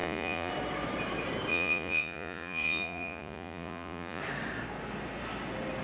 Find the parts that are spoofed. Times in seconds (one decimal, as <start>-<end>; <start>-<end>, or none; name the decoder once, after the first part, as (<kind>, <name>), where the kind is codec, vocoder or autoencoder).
0.0-0.5 (vocoder, Vocos); 1.5-4.2